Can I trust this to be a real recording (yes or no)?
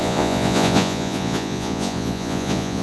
no